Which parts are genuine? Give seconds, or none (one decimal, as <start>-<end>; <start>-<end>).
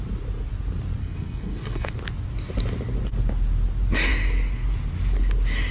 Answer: 0.0-1.0; 1.9-5.7